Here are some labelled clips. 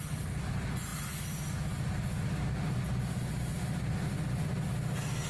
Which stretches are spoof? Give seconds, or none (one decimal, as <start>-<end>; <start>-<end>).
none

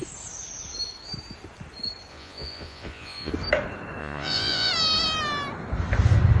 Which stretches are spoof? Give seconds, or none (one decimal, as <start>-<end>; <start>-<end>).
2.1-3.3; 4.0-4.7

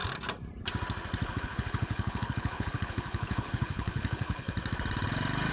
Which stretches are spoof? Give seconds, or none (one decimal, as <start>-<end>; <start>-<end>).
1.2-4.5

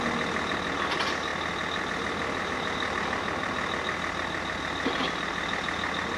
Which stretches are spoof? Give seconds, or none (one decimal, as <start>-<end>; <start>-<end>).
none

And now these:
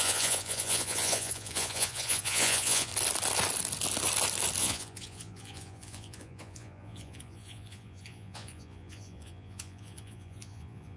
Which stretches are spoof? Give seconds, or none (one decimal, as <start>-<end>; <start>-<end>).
0.0-2.9; 4.6-11.0

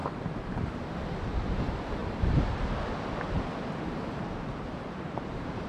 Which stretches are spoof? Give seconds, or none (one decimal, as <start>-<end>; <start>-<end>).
0.0-2.0; 4.6-5.7

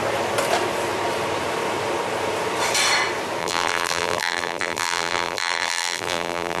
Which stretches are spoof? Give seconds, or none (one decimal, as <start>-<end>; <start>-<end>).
3.4-6.6

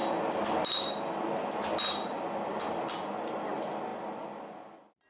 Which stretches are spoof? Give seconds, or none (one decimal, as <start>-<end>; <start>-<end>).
none